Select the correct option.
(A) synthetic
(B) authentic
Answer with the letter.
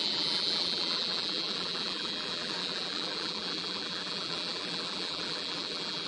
A